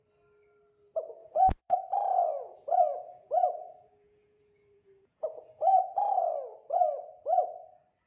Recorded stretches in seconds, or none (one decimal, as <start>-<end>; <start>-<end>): 0.0-1.2; 6.1-8.1